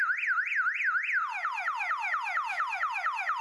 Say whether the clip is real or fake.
real